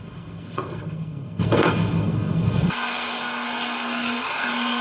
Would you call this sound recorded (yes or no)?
no